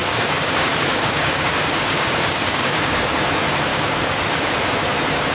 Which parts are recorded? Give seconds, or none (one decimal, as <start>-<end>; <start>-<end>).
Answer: 3.1-3.7; 4.5-5.3